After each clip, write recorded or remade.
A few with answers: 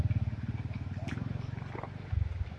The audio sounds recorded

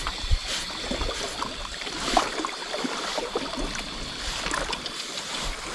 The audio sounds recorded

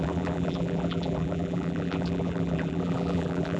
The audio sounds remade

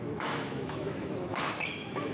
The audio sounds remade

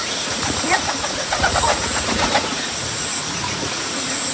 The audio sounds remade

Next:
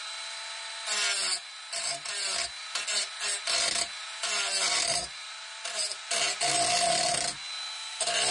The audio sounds recorded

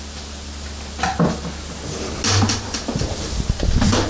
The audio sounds recorded